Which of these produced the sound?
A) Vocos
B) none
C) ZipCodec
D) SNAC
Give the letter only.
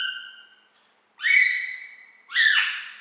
B